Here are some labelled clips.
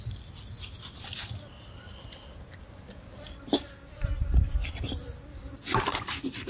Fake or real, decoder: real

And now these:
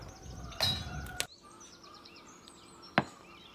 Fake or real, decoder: real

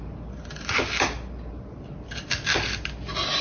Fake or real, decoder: real